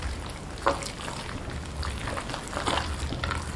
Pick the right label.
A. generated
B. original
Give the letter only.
B